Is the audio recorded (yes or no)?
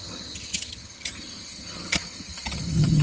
no